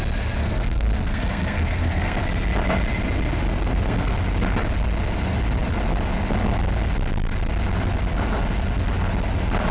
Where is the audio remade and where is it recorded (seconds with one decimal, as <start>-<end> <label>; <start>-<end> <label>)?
0.0-0.4 recorded; 0.4-2.2 remade; 2.2-3.5 recorded; 3.5-4.1 remade; 4.1-9.7 recorded